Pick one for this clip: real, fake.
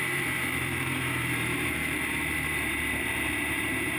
fake